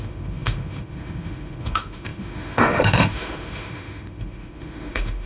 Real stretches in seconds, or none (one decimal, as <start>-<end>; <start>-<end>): none